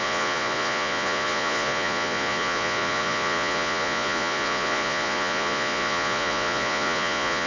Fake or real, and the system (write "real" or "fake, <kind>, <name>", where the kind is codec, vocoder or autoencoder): fake, vocoder, Vocos